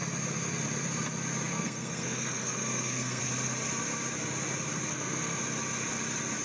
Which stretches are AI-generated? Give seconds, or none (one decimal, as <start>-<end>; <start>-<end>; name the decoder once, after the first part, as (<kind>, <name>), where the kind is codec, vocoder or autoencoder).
1.5-3.2 (codec, SNAC); 4.9-5.4